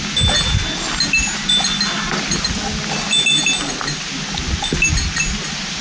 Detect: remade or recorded recorded